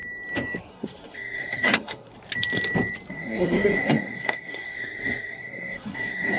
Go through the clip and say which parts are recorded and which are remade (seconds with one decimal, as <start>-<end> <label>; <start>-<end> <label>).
0.0-0.7 recorded; 0.7-2.1 remade; 2.1-3.1 recorded; 3.1-6.4 remade